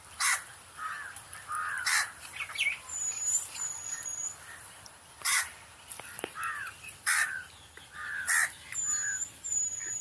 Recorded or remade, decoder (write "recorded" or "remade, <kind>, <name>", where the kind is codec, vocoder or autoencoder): remade, vocoder, BigVGAN v2